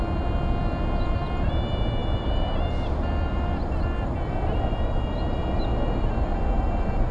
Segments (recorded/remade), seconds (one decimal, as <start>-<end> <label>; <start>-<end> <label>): 0.0-7.1 recorded

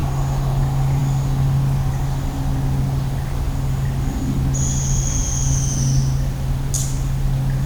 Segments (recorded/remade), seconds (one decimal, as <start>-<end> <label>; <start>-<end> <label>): 0.0-7.7 recorded

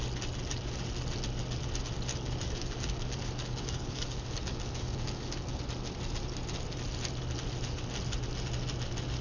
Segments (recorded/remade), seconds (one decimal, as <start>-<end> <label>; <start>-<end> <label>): 0.0-2.1 recorded; 2.1-5.6 remade; 5.6-9.2 recorded